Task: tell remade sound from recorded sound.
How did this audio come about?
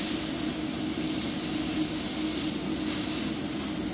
recorded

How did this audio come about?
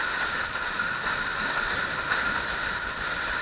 recorded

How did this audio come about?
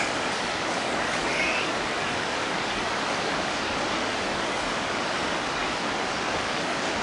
remade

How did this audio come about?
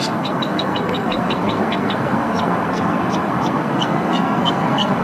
remade